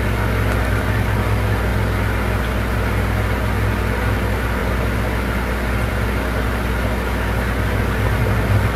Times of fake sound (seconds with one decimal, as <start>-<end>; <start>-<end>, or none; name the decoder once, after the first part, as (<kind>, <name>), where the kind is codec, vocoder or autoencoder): none